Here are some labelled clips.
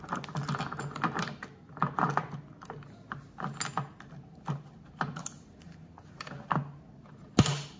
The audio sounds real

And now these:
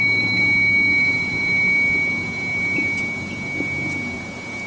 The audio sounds fake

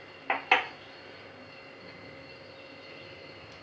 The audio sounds real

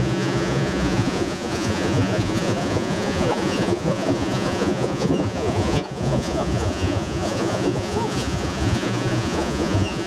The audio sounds fake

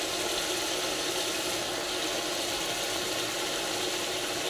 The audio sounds real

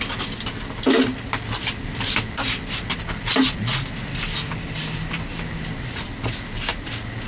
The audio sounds real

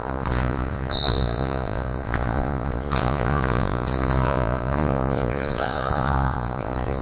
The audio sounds fake